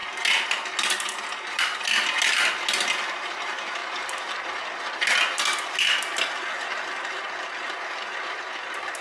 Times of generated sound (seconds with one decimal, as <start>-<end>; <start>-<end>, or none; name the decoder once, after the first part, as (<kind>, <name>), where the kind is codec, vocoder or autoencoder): none